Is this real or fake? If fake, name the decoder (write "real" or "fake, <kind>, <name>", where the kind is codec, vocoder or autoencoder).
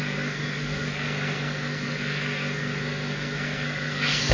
fake, codec, SNAC